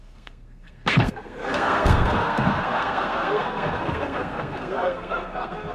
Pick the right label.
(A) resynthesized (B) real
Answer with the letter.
A